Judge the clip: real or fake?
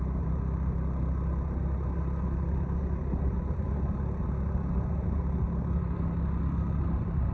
real